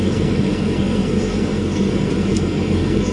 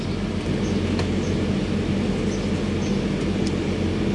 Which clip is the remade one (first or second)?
first